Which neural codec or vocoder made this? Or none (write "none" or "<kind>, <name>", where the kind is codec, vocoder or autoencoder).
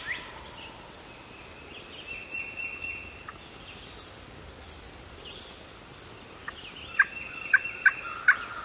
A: none